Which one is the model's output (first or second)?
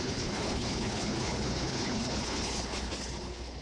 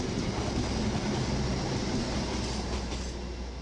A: first